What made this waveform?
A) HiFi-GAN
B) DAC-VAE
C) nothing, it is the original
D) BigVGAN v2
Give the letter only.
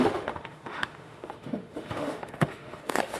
B